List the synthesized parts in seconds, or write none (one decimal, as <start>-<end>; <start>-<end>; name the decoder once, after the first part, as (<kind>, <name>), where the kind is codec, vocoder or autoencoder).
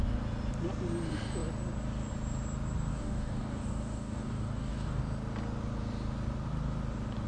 2.9-5.0 (codec, DAC)